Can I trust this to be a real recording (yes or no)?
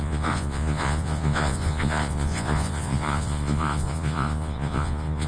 no